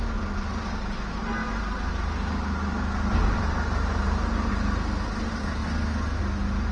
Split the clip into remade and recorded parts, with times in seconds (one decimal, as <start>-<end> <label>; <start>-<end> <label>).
0.0-6.7 recorded